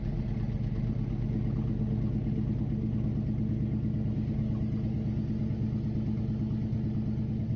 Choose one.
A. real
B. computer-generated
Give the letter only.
A